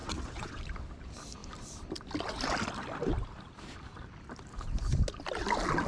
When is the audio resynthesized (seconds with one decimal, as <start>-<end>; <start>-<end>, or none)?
0.0-0.6

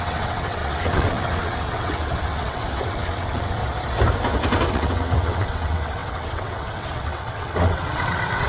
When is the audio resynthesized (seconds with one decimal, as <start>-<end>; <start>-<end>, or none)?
0.0-3.6; 4.7-8.5

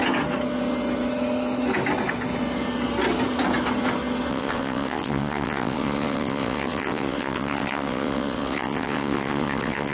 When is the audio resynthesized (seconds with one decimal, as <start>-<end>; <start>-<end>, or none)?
4.3-9.9

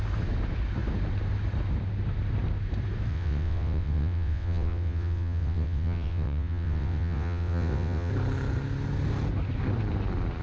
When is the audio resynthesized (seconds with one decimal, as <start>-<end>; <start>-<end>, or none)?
3.1-8.1

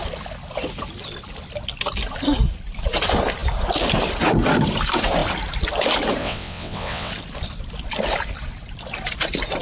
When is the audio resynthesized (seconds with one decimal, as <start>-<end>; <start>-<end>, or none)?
6.2-7.1